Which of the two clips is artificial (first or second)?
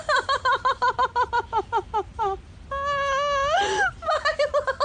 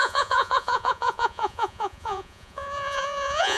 second